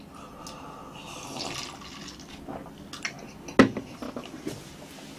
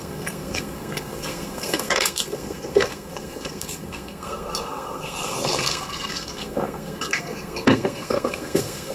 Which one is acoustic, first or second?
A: first